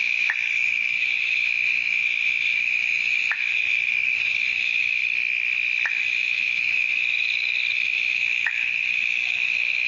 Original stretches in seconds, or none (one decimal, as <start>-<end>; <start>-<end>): 5.0-5.9